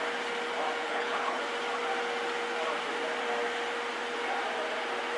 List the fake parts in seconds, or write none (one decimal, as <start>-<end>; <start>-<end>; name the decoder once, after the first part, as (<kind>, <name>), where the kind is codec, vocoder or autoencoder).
0.8-1.4 (codec, HILCodec)